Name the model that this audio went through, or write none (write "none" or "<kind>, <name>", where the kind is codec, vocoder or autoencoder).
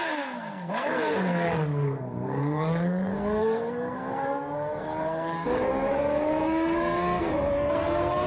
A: codec, SNAC